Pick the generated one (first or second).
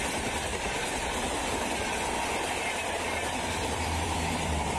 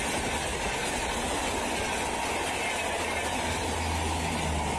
first